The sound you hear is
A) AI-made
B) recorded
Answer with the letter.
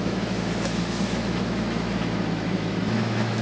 A